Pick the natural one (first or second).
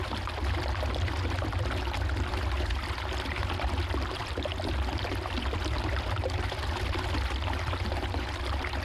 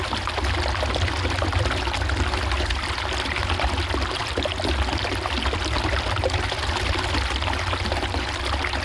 second